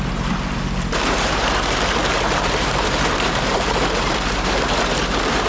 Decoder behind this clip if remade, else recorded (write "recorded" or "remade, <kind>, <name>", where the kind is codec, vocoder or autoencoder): remade, vocoder, BigVGAN v2